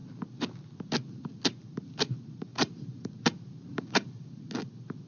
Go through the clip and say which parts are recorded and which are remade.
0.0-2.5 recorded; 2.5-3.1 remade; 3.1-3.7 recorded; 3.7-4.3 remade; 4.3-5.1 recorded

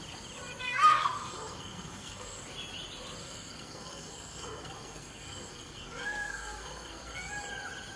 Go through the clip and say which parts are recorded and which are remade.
0.0-0.6 recorded; 0.6-2.4 remade; 2.4-3.2 recorded; 3.2-7.3 remade; 7.3-8.0 recorded

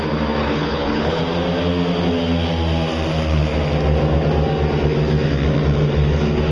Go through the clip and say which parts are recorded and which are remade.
0.0-0.4 recorded; 0.4-1.2 remade; 1.2-6.5 recorded